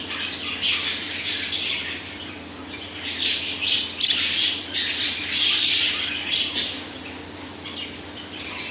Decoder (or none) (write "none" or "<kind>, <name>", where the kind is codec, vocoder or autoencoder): vocoder, BigVGAN v2